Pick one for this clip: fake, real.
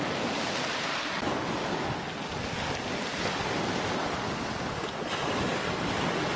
real